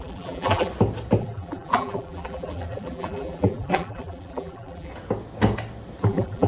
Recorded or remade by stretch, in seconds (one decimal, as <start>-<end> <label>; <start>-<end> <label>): 0.0-0.7 remade; 0.7-1.2 recorded; 1.2-4.9 remade; 4.9-6.0 recorded; 6.0-6.5 remade